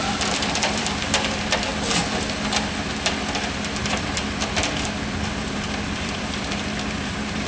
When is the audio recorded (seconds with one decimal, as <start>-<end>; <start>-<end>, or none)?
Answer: 1.7-5.3

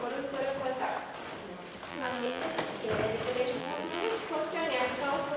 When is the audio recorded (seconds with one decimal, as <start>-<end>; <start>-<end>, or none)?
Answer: 0.0-1.9; 2.4-3.6; 4.1-5.4

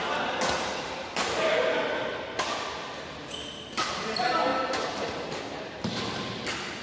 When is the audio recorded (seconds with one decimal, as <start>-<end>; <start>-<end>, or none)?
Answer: 0.0-4.5; 6.3-6.8